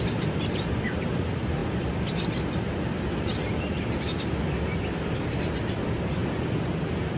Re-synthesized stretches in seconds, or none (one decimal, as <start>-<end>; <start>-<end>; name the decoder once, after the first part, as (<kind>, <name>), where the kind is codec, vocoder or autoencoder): none